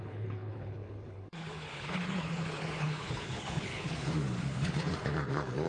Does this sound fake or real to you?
fake